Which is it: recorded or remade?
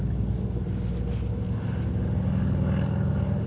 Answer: recorded